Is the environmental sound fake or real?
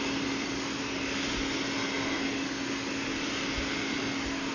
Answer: real